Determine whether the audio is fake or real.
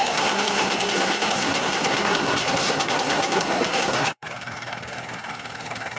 fake